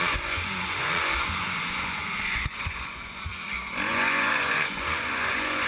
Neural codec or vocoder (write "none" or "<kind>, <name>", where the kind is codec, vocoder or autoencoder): vocoder, Vocos